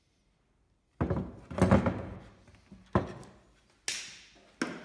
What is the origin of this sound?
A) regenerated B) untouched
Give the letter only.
B